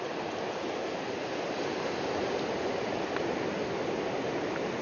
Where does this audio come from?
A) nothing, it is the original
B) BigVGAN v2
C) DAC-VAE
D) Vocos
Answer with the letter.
A